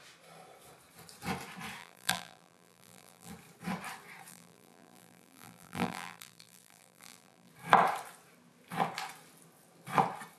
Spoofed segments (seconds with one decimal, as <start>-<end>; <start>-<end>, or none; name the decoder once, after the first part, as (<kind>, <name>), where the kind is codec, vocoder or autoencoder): 1.8-3.3 (vocoder, BigVGAN v2); 4.3-7.5